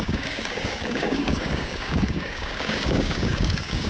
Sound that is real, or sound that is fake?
fake